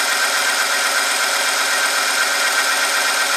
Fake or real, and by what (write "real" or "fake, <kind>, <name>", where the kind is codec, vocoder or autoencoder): real